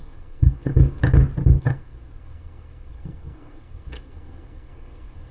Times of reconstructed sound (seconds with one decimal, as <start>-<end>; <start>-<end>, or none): 0.0-1.0; 1.6-5.3